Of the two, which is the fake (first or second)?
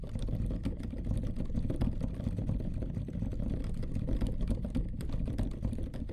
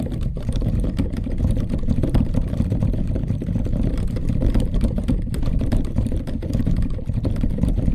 second